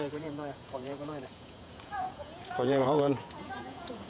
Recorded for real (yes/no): no